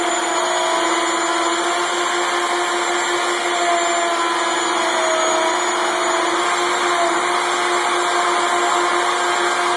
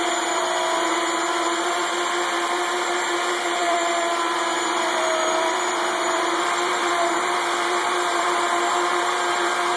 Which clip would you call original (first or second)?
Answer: first